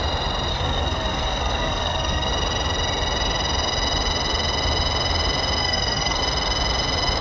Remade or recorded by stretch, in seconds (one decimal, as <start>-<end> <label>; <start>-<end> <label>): 0.0-0.5 recorded; 0.5-2.3 remade; 2.3-5.6 recorded; 5.6-6.2 remade; 6.2-7.2 recorded